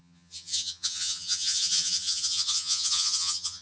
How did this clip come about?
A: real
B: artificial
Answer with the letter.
B